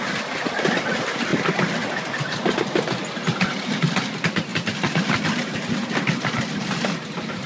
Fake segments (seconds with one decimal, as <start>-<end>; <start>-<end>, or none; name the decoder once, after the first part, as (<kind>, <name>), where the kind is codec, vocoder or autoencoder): none